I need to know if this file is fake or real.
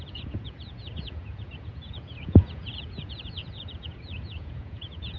fake